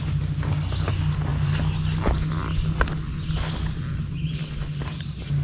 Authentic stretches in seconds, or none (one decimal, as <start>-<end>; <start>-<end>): 0.0-5.4